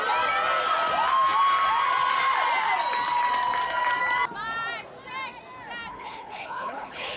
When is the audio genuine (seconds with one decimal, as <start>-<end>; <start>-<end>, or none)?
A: 0.0-5.9

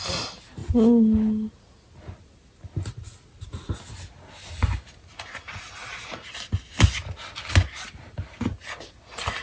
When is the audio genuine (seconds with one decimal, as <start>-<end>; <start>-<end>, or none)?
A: 0.0-9.4

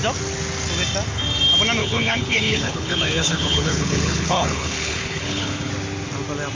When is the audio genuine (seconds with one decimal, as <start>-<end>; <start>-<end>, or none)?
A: 0.0-1.8; 5.7-6.5

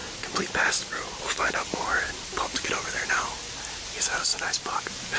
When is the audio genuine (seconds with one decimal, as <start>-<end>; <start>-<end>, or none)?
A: 0.0-5.2

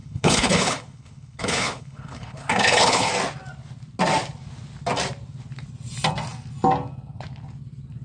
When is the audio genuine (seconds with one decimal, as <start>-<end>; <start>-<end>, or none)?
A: 3.1-8.0

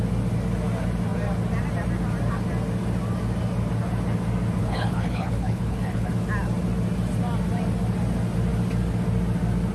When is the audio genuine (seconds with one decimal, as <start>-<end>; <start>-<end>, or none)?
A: 0.0-4.6; 6.1-9.7

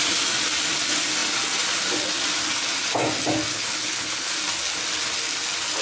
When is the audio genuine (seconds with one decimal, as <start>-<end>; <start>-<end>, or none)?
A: 0.0-3.5; 4.3-5.8

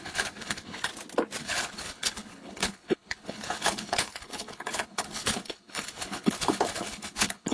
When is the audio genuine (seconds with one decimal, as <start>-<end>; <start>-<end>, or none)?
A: 0.9-1.4